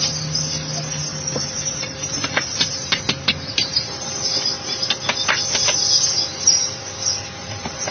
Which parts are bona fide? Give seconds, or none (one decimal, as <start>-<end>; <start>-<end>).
0.0-1.1; 4.9-6.3